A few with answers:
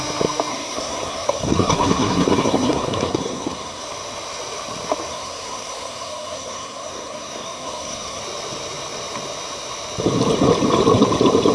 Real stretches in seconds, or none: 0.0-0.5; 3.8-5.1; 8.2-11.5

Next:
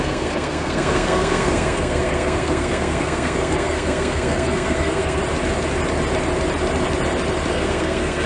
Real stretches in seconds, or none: 5.2-7.5